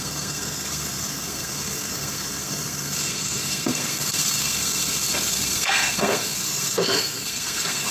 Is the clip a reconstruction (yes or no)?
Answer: yes